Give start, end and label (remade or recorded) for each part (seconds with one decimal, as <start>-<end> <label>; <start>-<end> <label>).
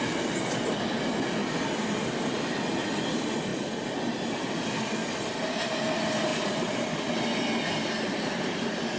0.0-9.0 recorded